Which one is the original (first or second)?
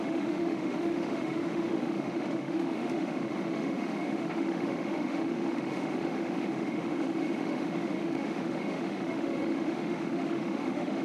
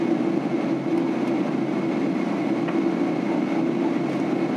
second